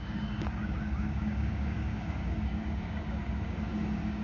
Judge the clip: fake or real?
fake